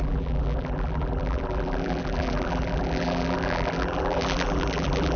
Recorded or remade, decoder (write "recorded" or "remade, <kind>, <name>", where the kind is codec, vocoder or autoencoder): remade, vocoder, BigVGAN v2